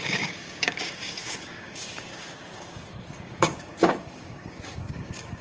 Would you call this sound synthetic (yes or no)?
yes